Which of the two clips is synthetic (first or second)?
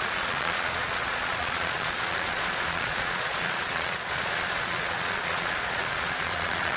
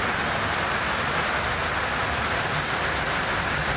first